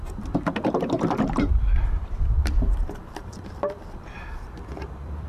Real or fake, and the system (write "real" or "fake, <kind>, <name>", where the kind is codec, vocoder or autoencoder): fake, vocoder, BigVGAN v2